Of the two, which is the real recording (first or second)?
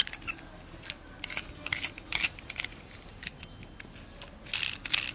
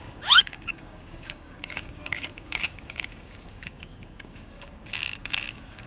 first